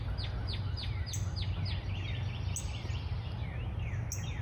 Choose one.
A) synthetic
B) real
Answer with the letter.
B